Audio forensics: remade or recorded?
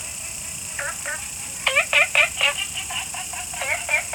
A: remade